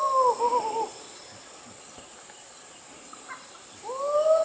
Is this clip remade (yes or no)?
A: no